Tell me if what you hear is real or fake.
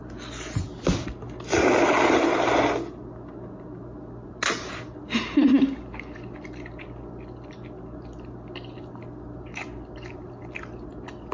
real